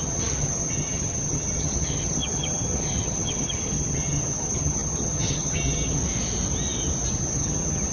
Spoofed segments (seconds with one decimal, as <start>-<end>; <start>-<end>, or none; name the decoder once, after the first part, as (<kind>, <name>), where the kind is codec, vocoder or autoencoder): 0.0-6.0 (vocoder, HiFi-GAN); 7.1-7.9